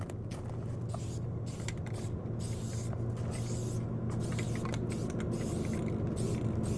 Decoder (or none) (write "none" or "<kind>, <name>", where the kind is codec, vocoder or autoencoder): none